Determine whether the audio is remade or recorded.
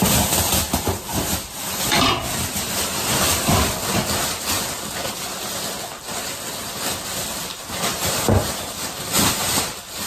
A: recorded